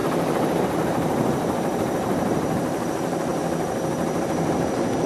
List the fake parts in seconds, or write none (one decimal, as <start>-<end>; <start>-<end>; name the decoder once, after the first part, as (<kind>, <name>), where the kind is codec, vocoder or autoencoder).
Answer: 0.0-3.3 (vocoder, BigVGAN v2); 4.2-5.1